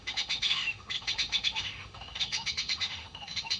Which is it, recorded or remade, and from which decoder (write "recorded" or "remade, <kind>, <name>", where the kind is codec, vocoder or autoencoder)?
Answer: remade, autoencoder, DAC-VAE